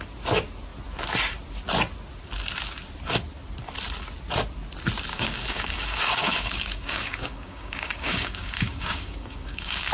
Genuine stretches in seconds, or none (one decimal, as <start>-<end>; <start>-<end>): 0.0-5.1